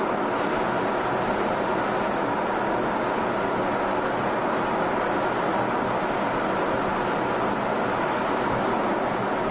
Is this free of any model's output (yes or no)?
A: yes